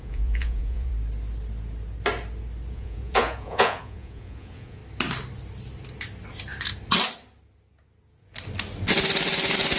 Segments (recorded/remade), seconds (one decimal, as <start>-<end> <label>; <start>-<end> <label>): 0.0-0.9 remade; 0.9-2.7 recorded; 2.7-4.8 remade; 4.8-9.8 recorded